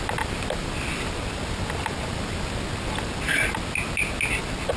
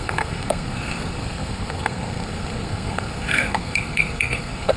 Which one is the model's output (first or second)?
second